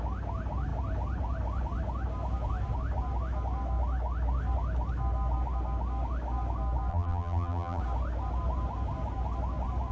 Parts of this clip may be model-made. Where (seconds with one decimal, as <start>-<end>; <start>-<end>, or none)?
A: 6.9-7.8